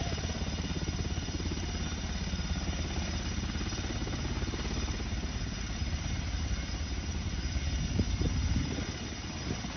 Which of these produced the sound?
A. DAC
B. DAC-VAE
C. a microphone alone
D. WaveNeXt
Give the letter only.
C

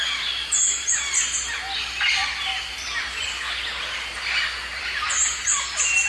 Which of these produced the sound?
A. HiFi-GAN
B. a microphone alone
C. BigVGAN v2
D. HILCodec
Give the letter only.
B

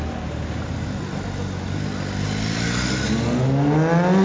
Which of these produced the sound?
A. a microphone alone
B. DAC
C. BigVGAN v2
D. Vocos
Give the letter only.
A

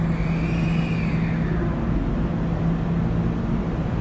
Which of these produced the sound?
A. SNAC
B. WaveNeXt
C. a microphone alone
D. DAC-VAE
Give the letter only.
C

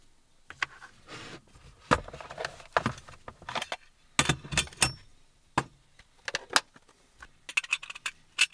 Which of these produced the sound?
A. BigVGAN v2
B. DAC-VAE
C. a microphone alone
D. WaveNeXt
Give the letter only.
C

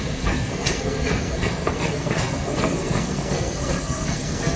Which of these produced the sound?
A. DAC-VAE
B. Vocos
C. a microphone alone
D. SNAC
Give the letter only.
D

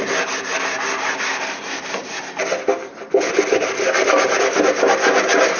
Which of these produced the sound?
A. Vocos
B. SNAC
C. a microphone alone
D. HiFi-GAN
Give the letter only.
C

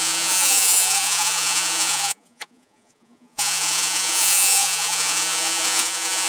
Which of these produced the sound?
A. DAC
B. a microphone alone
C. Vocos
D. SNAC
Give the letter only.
C